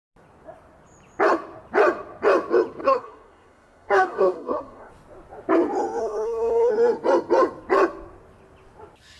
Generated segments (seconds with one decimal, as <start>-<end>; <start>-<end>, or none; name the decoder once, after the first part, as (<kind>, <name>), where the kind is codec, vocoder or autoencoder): 2.8-4.9 (codec, SNAC); 6.0-6.7